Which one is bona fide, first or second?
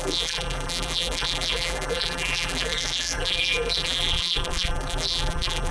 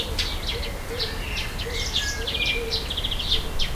second